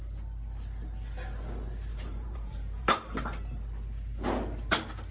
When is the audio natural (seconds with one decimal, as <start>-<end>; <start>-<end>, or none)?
0.0-1.9; 3.2-5.1